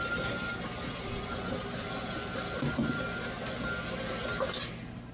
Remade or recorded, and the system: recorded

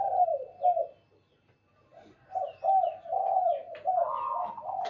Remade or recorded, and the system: recorded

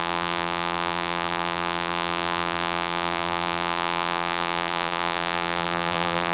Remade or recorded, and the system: remade, vocoder, BigVGAN v2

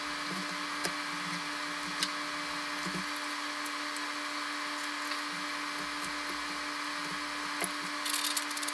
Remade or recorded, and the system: recorded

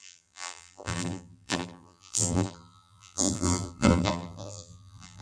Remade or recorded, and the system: remade, vocoder, BigVGAN v2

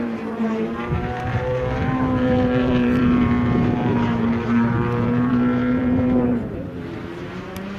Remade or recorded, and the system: remade, vocoder, BigVGAN v2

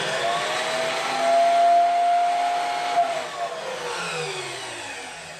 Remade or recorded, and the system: recorded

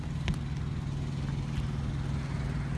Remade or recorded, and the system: recorded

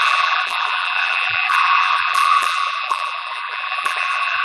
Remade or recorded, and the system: remade, vocoder, BigVGAN v2